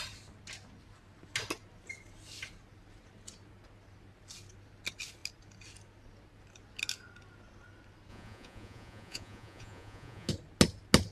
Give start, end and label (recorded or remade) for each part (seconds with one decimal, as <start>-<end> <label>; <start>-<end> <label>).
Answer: 0.0-8.1 recorded; 8.1-10.3 remade; 10.3-11.1 recorded